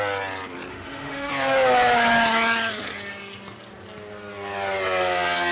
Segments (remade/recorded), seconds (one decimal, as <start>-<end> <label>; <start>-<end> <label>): 0.0-0.7 recorded; 0.7-1.3 remade; 1.3-5.5 recorded